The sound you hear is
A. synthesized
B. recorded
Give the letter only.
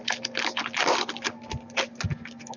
B